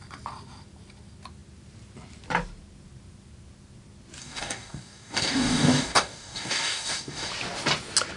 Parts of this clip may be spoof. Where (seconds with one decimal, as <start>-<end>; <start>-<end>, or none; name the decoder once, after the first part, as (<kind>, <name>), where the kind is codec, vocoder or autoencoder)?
4.2-7.3 (codec, DAC)